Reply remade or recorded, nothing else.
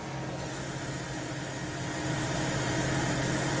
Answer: recorded